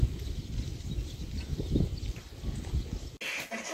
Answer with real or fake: real